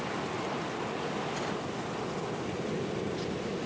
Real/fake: real